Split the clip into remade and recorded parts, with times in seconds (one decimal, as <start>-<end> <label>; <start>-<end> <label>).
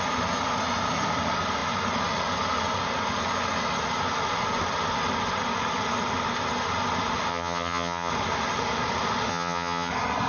0.0-7.3 recorded; 7.3-8.1 remade; 8.1-9.3 recorded; 9.3-9.9 remade; 9.9-10.3 recorded